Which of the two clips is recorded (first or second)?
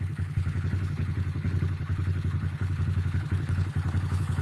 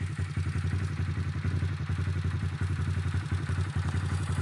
second